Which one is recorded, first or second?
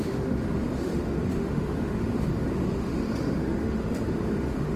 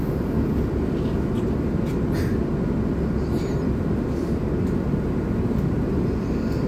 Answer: second